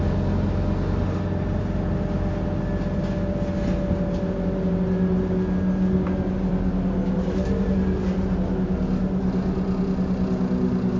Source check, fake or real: real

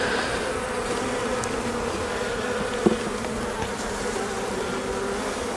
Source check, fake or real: real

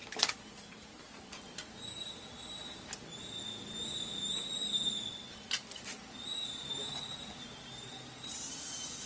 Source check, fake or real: real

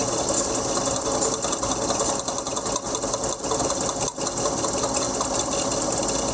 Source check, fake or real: real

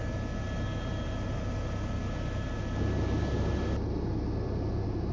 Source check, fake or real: real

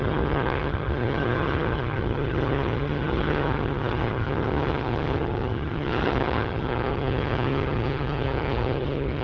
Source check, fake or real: fake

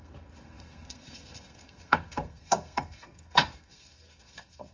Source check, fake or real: fake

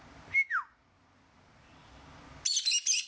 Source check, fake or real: real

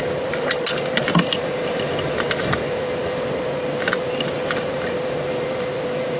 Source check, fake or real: real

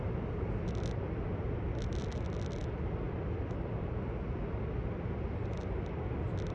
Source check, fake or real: real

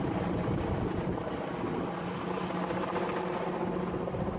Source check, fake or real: real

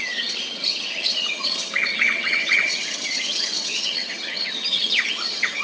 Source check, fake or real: fake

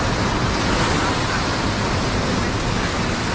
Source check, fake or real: real